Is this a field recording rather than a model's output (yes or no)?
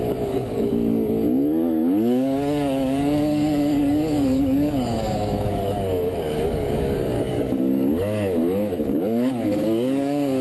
no